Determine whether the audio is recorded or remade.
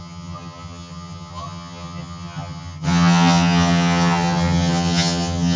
remade